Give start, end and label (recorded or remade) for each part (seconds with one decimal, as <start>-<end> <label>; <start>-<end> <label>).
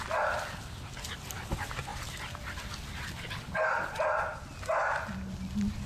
0.0-5.9 recorded